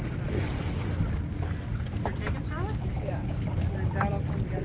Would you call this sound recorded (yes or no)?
yes